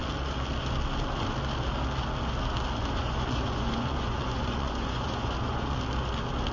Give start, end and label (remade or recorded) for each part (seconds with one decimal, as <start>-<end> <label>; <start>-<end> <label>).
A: 0.0-2.8 recorded; 2.8-5.8 remade; 5.8-6.5 recorded